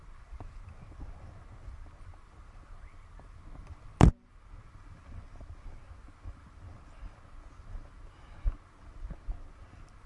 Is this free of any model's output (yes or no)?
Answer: yes